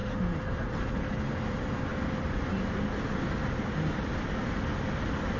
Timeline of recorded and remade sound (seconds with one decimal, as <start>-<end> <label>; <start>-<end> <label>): 0.0-5.4 recorded